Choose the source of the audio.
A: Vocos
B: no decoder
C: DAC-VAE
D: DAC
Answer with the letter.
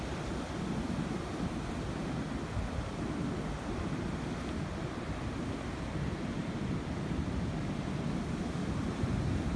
B